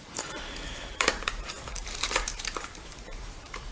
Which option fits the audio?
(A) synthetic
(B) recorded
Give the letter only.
A